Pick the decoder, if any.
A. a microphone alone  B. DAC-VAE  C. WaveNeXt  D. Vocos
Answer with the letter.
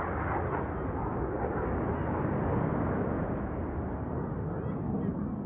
A